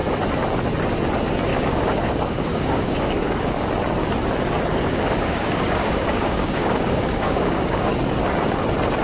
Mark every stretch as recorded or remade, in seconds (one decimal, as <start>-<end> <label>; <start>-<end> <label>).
0.0-1.5 recorded; 1.5-3.7 remade; 3.7-4.7 recorded; 4.7-7.9 remade; 7.9-9.0 recorded